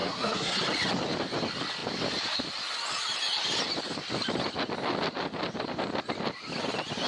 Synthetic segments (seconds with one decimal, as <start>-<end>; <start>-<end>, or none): 0.0-0.6